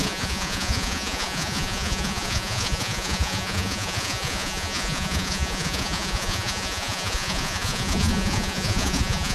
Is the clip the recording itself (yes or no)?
no